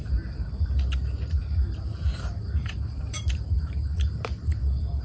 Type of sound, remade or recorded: remade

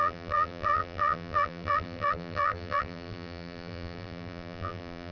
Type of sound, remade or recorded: remade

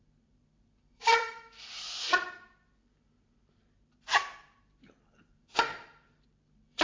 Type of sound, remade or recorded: remade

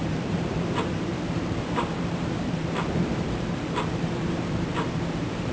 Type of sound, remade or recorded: remade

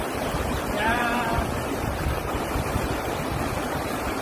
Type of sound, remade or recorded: remade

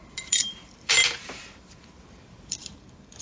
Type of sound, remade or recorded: remade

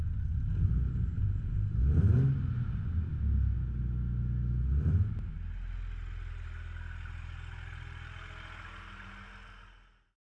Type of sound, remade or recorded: recorded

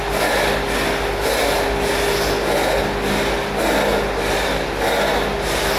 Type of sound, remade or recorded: recorded